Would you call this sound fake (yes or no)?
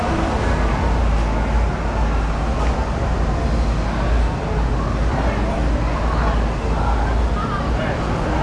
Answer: no